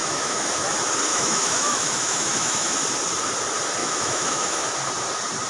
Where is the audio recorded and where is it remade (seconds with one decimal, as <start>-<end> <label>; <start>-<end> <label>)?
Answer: 0.0-0.7 remade; 0.7-1.1 recorded; 1.1-2.7 remade; 2.7-3.8 recorded; 3.8-4.7 remade; 4.7-5.5 recorded